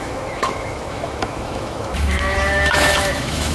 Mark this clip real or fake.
fake